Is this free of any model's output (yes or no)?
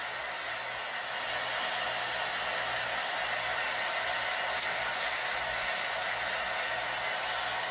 yes